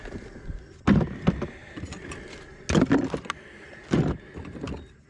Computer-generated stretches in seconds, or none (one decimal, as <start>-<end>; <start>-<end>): none